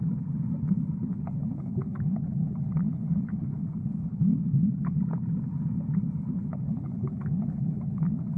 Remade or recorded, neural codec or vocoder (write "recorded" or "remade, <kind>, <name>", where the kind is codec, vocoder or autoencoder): remade, codec, HILCodec